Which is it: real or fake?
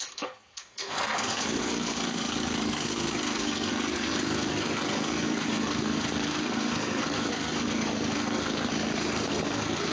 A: fake